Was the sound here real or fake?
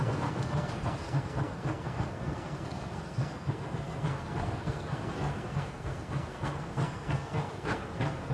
fake